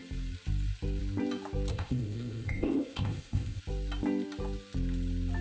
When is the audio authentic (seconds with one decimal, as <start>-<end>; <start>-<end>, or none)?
0.0-1.7; 3.6-5.4